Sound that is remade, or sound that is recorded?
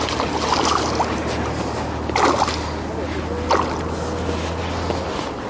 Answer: recorded